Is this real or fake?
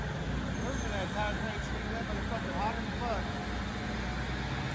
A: real